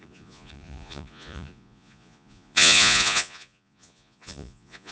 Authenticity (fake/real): fake